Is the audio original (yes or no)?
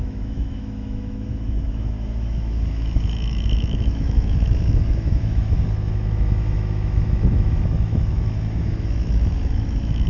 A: no